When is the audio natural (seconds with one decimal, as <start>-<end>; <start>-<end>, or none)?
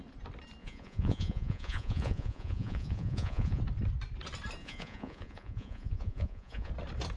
0.0-0.6; 3.6-4.6; 6.7-7.2